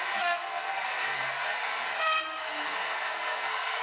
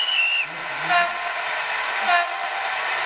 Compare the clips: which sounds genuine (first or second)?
second